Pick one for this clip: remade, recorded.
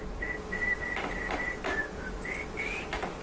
recorded